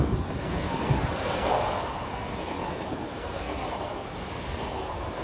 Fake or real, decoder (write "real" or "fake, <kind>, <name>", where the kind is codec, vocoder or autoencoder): fake, codec, SNAC